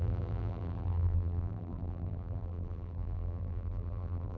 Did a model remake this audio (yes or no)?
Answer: yes